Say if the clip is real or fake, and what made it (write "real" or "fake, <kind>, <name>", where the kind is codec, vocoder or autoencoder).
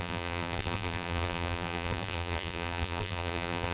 fake, vocoder, BigVGAN v2